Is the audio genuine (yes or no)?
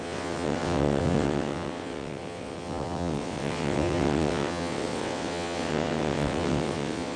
no